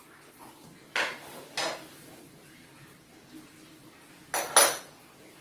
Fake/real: real